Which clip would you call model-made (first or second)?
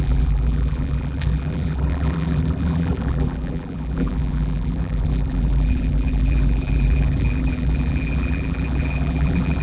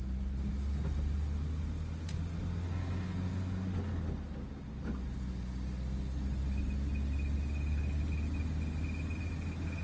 first